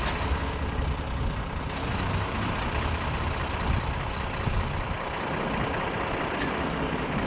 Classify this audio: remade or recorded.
remade